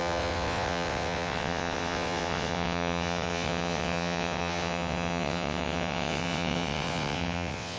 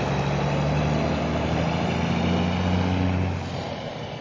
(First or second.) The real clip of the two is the second